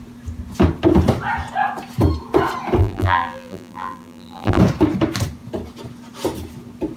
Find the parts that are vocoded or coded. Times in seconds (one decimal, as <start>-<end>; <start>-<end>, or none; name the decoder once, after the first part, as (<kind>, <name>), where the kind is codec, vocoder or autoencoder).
2.8-4.6 (vocoder, BigVGAN v2)